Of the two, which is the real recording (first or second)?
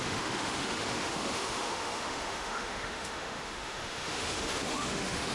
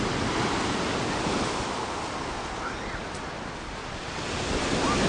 second